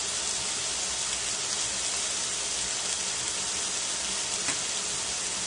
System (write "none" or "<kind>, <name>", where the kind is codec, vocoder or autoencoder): none